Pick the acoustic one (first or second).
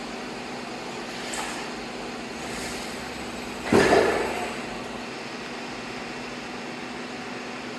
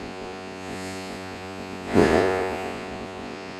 first